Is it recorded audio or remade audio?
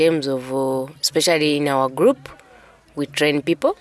recorded